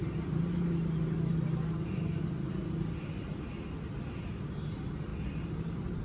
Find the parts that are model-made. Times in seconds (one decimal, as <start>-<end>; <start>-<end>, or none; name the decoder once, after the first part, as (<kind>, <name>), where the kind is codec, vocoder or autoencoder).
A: none